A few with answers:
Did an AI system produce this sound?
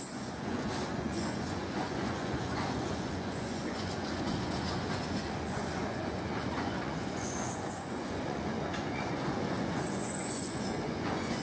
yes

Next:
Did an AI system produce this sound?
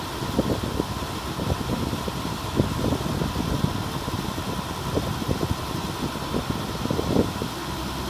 no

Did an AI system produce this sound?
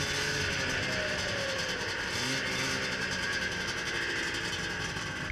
no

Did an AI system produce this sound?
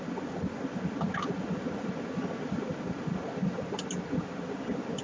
no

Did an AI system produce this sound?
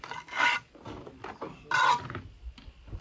no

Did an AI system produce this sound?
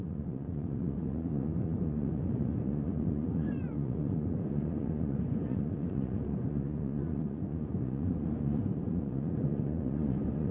yes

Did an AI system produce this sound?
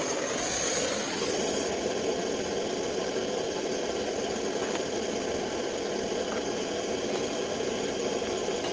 no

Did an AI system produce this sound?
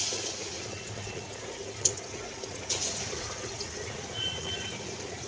yes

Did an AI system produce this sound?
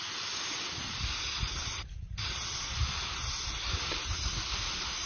no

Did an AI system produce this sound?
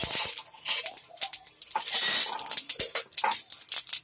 no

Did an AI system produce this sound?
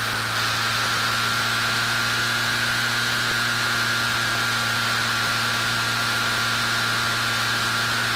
no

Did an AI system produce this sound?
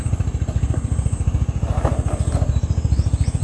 no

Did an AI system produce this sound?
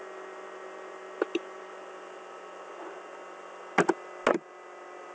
no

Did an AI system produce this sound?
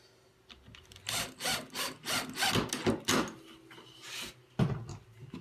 no